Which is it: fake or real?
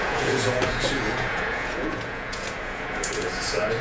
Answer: fake